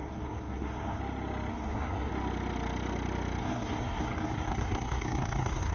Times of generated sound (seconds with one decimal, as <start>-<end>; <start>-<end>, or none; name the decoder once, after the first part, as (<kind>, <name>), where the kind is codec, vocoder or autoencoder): 0.0-1.0 (codec, SNAC); 1.5-2.1; 3.4-5.7